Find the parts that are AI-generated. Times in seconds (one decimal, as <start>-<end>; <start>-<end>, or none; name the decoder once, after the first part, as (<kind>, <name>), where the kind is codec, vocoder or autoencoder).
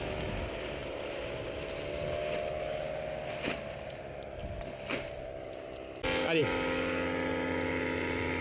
none